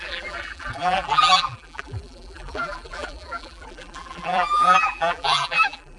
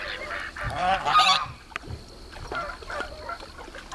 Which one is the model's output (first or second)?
first